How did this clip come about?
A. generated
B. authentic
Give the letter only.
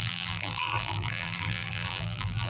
A